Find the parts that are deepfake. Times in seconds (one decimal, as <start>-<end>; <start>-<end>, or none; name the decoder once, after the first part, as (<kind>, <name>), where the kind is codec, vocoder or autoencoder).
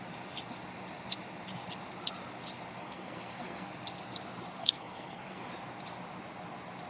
2.8-3.7 (codec, SNAC); 4.6-5.5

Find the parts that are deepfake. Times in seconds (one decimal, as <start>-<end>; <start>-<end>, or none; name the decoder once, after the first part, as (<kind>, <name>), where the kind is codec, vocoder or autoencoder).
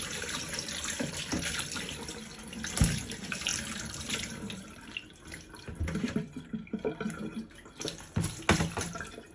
none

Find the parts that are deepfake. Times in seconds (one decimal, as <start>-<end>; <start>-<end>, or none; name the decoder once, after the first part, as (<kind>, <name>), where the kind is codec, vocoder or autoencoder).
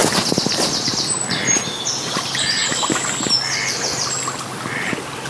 none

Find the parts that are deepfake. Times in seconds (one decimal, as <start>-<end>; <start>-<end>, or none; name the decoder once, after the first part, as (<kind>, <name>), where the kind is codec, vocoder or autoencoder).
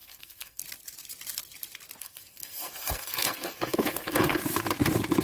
0.0-0.6 (codec, SNAC); 2.0-4.4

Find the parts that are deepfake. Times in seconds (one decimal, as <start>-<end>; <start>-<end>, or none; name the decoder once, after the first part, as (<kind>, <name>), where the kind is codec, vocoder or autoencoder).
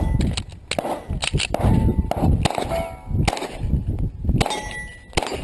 none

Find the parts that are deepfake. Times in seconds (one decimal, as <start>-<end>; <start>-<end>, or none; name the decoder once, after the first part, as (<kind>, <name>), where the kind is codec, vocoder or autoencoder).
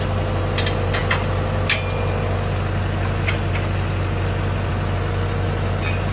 none